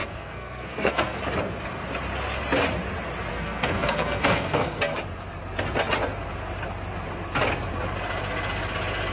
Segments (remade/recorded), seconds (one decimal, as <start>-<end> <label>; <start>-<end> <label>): 0.0-1.2 remade; 1.2-3.3 recorded; 3.3-4.9 remade; 4.9-9.1 recorded